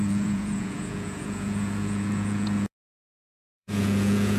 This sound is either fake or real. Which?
fake